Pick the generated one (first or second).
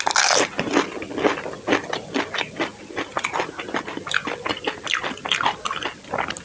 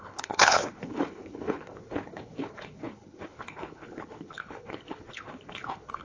second